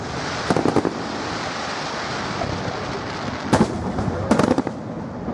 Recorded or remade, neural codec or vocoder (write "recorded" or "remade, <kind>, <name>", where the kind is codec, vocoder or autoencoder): recorded